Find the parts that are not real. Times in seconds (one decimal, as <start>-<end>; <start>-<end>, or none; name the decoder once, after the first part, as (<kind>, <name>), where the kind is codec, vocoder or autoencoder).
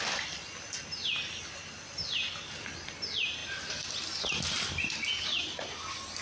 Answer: none